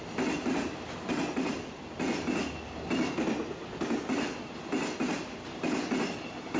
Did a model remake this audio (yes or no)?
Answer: no